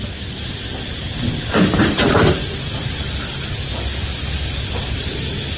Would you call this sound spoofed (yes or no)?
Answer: no